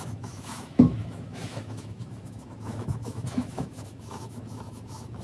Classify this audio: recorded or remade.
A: remade